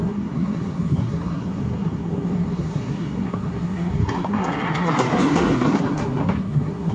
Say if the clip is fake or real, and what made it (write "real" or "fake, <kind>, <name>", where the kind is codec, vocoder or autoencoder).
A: fake, codec, SNAC